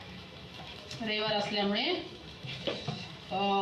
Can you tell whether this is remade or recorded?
remade